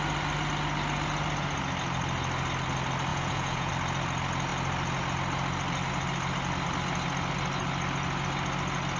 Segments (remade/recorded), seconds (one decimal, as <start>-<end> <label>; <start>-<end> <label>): 0.0-3.1 recorded; 3.1-3.7 remade; 3.7-9.0 recorded